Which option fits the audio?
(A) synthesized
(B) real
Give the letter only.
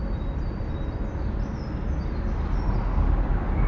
B